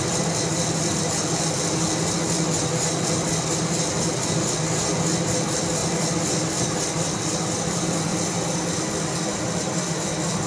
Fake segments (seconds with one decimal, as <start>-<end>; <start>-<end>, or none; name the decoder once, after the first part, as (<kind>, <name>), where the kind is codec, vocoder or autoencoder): none